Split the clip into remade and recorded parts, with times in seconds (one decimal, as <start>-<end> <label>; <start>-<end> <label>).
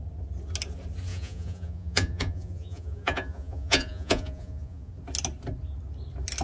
0.0-1.1 recorded; 1.1-4.9 remade; 4.9-6.4 recorded